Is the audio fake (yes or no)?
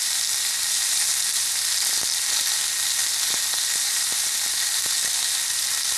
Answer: no